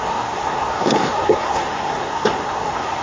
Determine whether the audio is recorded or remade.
remade